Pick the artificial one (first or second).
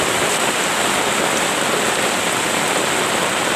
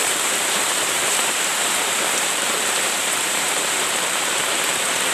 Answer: second